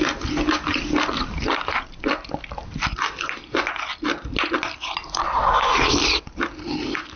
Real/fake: real